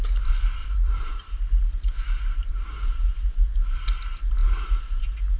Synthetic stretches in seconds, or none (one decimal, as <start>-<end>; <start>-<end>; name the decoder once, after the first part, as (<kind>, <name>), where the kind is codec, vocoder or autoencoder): 0.6-2.5 (vocoder, BigVGAN v2)